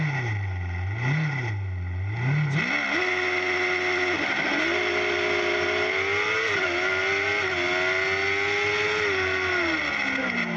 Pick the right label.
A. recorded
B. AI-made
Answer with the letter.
A